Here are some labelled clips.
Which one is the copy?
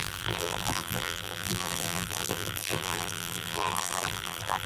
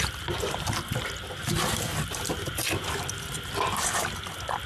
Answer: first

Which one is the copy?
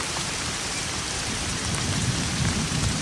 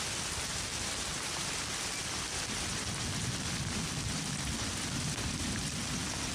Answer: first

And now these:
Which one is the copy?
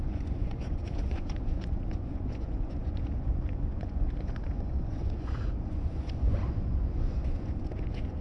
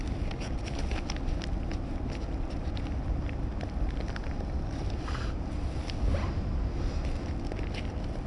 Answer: first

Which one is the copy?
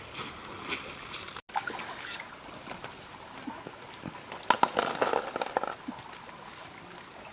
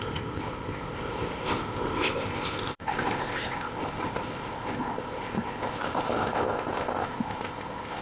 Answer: second